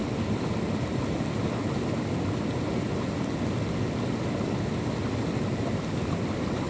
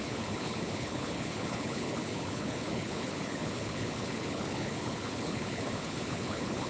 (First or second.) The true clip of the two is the first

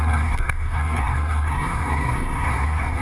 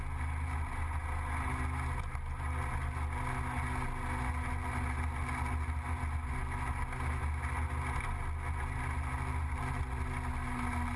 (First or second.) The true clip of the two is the second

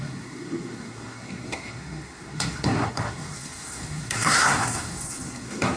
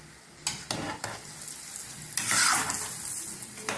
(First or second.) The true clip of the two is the second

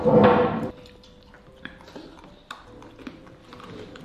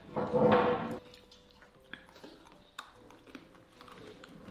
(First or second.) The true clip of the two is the second